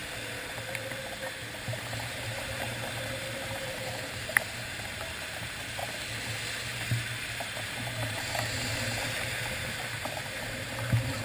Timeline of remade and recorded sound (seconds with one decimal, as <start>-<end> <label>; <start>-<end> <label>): 0.0-1.3 recorded; 1.3-5.8 remade; 5.8-6.6 recorded; 6.6-11.2 remade